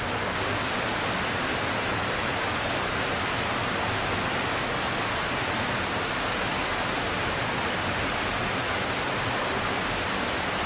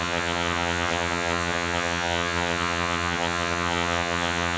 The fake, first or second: second